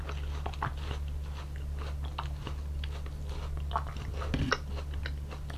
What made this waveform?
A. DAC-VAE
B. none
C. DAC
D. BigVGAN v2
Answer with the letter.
B